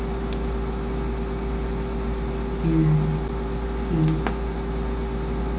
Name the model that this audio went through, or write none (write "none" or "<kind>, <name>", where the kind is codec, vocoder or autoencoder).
none